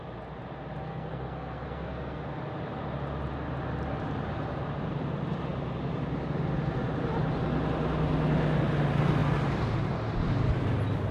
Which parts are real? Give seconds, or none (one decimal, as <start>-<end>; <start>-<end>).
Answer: 0.0-0.8; 2.2-11.1